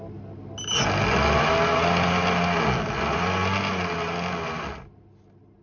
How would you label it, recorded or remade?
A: recorded